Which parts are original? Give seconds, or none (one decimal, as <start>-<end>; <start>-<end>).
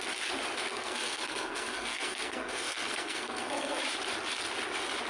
0.0-0.7; 3.8-5.1